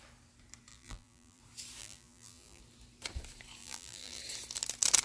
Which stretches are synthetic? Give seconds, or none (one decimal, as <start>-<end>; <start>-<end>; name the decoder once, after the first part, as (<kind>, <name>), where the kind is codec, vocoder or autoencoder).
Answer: 0.7-1.4 (vocoder, BigVGAN v2); 1.8-2.6; 3.6-4.2